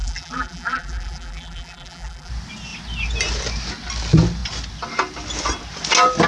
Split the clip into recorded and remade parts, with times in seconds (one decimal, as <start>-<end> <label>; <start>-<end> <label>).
0.0-2.3 remade; 2.3-6.3 recorded